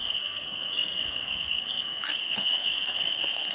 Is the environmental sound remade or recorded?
remade